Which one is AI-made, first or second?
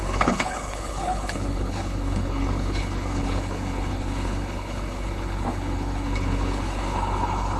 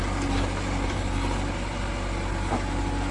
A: first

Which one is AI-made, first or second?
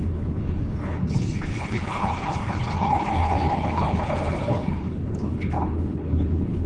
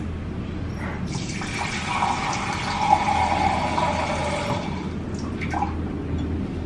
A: first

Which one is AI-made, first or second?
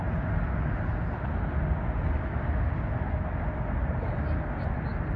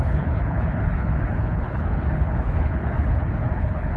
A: second